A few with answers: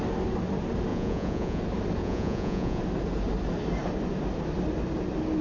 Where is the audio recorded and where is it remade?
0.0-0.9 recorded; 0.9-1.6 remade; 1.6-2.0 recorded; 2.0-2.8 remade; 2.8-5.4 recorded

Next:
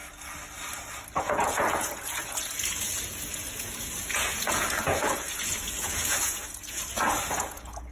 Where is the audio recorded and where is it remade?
0.0-1.2 recorded; 1.2-7.9 remade

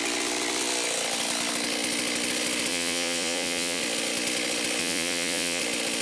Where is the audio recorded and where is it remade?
0.0-2.7 recorded; 2.7-3.8 remade; 3.8-4.8 recorded; 4.8-5.6 remade; 5.6-6.0 recorded

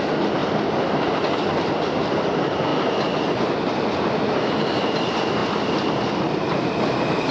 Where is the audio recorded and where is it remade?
0.0-7.3 recorded

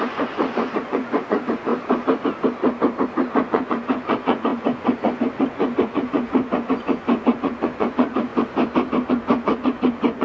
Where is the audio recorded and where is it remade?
0.0-1.7 remade; 1.7-3.3 recorded; 3.3-8.3 remade; 8.3-9.1 recorded; 9.1-10.2 remade

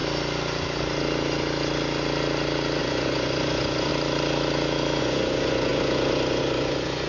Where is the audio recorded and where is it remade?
0.0-2.8 recorded; 2.8-3.9 remade; 3.9-5.0 recorded; 5.0-7.1 remade

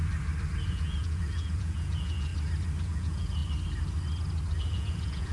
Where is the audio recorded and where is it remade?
0.0-0.7 recorded; 0.7-2.3 remade; 2.3-2.8 recorded; 2.8-3.4 remade; 3.4-4.6 recorded; 4.6-5.3 remade

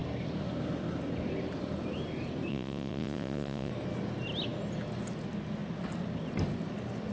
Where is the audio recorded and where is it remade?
0.0-2.5 recorded; 2.5-3.7 remade; 3.7-7.1 recorded